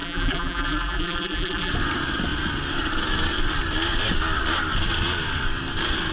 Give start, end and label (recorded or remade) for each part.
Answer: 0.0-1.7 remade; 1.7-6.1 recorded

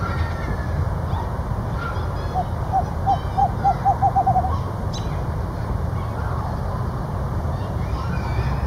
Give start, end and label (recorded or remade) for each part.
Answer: 0.0-3.4 recorded; 3.4-7.7 remade; 7.7-8.7 recorded

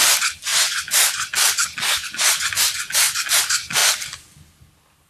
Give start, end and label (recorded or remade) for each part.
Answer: 0.0-5.1 recorded

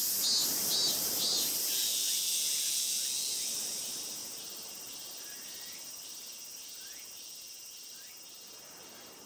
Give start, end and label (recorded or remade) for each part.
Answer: 0.0-0.4 recorded; 0.4-1.5 remade; 1.5-4.2 recorded; 4.2-8.1 remade; 8.1-9.3 recorded

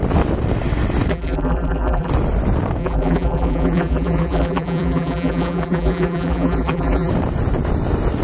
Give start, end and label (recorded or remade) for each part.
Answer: 0.0-1.1 recorded; 1.1-2.1 remade; 2.1-2.8 recorded; 2.8-7.1 remade; 7.1-8.2 recorded

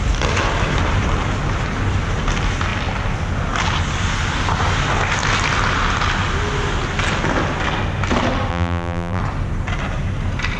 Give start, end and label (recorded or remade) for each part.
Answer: 0.0-8.5 recorded; 8.5-9.2 remade; 9.2-10.6 recorded